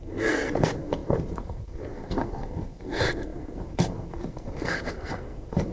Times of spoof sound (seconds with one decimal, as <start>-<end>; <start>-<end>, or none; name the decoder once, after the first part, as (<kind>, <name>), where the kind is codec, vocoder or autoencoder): 0.0-5.7 (codec, SNAC)